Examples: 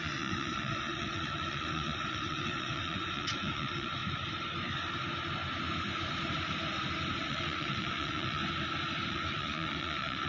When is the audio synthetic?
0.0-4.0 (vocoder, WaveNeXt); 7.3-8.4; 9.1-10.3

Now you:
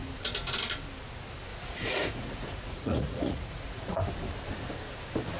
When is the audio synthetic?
1.5-4.0 (vocoder, Vocos)

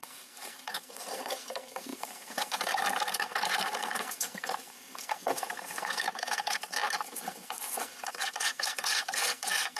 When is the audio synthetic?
0.0-9.8 (codec, SNAC)

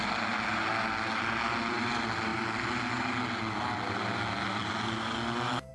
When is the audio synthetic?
none

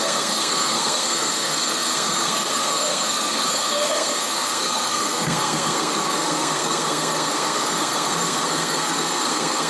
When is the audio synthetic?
0.0-9.7 (codec, SNAC)

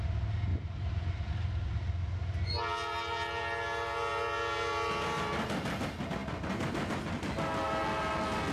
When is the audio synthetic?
0.5-1.2 (vocoder, BigVGAN v2)

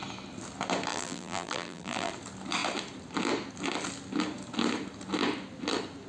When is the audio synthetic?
0.9-2.1 (vocoder, BigVGAN v2)